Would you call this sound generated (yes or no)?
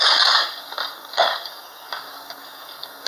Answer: yes